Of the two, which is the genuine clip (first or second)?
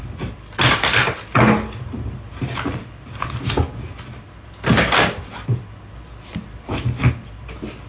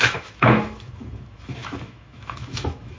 first